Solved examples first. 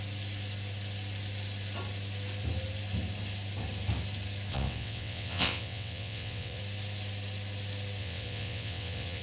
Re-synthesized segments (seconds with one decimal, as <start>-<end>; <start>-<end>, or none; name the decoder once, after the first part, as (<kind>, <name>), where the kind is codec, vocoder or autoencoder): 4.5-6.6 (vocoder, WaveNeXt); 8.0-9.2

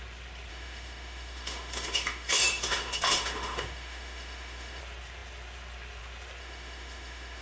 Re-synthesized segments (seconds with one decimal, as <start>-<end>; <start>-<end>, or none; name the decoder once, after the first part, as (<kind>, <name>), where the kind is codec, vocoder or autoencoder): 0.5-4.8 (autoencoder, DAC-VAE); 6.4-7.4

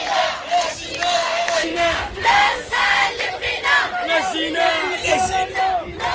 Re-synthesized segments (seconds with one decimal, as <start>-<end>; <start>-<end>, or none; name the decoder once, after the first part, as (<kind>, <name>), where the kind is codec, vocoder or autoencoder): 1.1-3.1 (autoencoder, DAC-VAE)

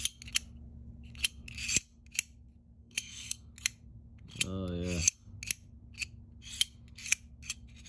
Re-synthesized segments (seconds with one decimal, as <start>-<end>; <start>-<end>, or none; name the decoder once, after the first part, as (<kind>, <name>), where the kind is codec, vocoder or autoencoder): 2.8-3.5 (codec, SNAC)